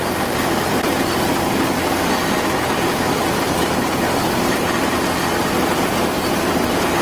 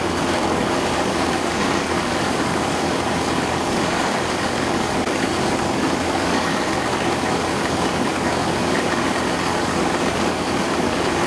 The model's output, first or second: second